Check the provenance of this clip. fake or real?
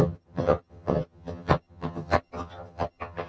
fake